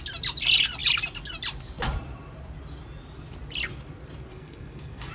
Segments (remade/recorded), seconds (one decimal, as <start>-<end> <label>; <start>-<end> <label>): 0.0-4.3 recorded; 4.3-5.1 remade